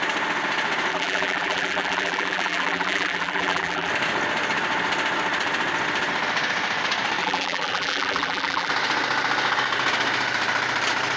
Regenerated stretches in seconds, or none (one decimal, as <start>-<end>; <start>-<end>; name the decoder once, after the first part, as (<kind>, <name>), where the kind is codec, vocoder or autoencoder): 0.9-3.9 (vocoder, BigVGAN v2); 7.2-8.7